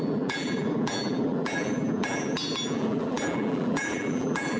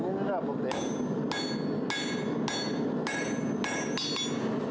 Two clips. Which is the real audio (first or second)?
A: second